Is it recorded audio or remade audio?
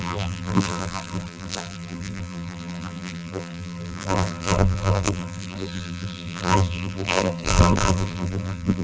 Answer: remade